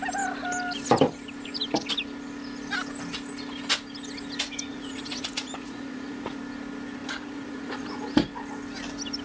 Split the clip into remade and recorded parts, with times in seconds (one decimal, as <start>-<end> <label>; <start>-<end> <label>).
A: 0.0-4.7 recorded; 4.7-6.4 remade; 6.4-7.0 recorded; 7.0-8.0 remade; 8.0-9.2 recorded